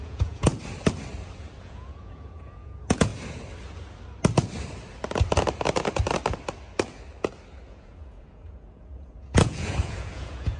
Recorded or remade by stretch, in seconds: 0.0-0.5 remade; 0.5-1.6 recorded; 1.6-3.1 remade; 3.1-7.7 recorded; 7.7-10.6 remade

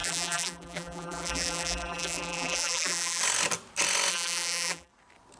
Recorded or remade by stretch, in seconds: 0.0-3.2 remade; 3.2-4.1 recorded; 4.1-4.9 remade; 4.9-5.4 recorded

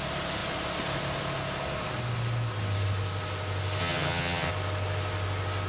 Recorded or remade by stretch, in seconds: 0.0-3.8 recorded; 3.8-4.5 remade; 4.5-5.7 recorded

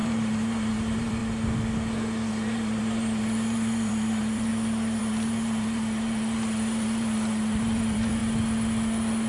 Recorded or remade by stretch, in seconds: 0.0-1.2 remade; 1.2-2.3 recorded; 2.3-4.5 remade; 4.5-5.0 recorded; 5.0-8.2 remade; 8.2-9.3 recorded

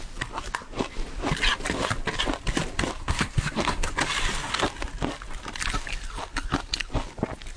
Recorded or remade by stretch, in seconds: 0.0-3.0 recorded; 3.0-3.9 remade; 3.9-7.6 recorded

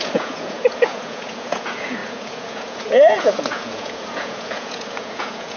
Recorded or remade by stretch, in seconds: 0.0-5.6 remade